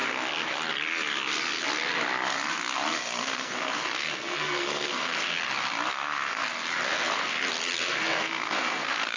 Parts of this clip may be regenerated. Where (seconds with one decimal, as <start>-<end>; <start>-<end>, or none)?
3.2-5.3; 5.9-6.4; 7.8-9.2